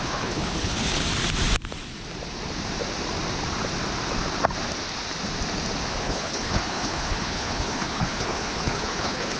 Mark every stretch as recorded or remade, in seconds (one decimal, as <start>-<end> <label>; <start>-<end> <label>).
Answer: 0.0-1.0 remade; 1.0-5.9 recorded; 5.9-9.4 remade